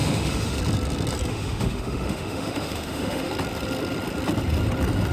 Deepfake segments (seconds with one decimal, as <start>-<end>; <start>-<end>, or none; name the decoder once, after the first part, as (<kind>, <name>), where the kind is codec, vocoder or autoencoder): 0.0-0.6 (autoencoder, DAC-VAE); 1.3-3.3